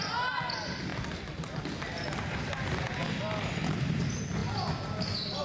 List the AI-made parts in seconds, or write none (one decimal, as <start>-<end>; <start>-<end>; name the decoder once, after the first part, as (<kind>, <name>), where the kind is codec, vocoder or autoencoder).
none